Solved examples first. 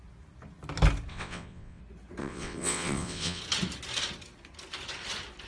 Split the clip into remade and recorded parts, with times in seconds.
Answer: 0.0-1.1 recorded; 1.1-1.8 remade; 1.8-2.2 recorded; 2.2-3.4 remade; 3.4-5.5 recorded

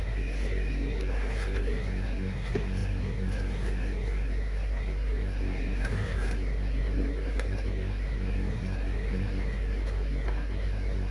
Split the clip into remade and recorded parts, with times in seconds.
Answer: 0.0-11.1 remade

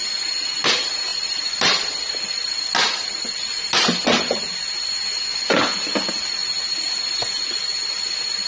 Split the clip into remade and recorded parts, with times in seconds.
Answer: 0.0-8.5 recorded

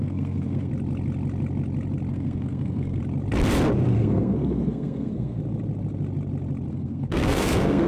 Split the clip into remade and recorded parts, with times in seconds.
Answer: 0.0-0.7 remade; 0.7-2.1 recorded; 2.1-3.0 remade; 3.0-3.9 recorded; 3.9-5.4 remade; 5.4-6.7 recorded; 6.7-7.9 remade